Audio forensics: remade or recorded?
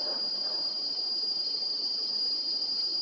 remade